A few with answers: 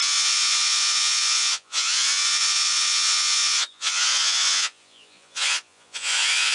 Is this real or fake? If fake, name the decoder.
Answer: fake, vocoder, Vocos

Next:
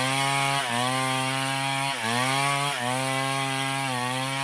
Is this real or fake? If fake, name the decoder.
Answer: real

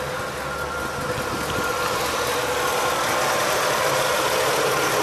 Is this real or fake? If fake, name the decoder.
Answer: real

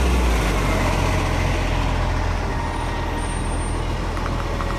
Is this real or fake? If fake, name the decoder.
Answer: real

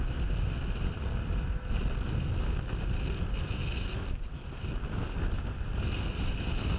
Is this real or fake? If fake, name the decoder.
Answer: real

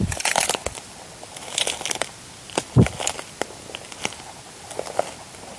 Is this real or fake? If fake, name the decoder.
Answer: real